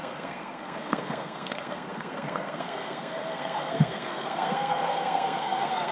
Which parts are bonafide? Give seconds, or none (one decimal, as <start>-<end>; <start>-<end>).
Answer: none